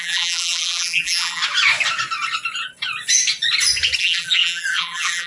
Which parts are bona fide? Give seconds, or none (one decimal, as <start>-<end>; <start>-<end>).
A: 1.4-4.0